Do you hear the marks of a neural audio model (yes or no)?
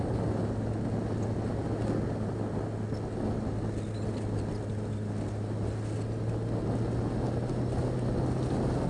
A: no